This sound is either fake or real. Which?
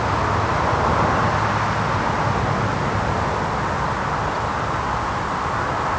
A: real